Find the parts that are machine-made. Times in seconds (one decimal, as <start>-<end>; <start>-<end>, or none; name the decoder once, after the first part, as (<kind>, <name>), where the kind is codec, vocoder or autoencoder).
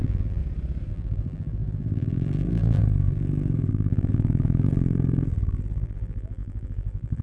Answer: 0.0-0.4 (vocoder, BigVGAN v2); 0.9-7.2